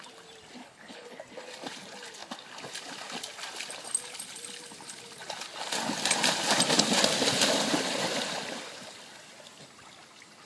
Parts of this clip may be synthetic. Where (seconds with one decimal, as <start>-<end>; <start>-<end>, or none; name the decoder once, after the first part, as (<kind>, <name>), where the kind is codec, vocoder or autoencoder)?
0.6-1.2 (codec, HILCodec)